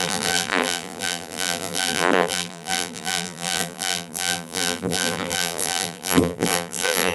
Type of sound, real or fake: fake